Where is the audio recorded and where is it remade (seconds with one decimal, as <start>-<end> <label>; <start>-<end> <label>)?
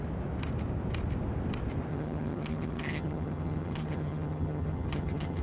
0.0-1.9 recorded; 1.9-5.4 remade